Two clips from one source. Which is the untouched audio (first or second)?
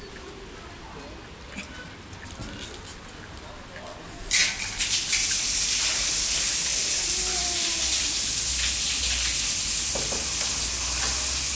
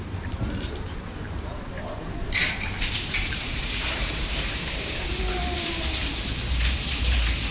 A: first